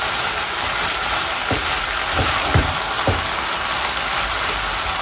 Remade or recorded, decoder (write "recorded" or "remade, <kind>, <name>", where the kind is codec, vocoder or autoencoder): recorded